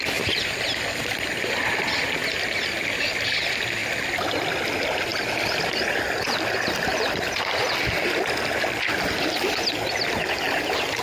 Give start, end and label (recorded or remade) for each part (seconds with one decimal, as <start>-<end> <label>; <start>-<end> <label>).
0.0-11.0 recorded